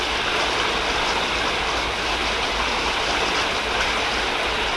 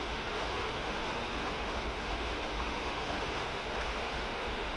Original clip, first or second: first